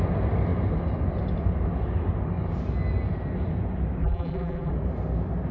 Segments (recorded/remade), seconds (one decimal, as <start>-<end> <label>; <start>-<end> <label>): 0.0-4.0 recorded; 4.0-4.7 remade; 4.7-5.5 recorded